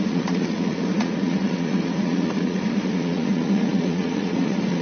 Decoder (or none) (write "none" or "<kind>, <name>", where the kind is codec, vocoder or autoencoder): vocoder, Vocos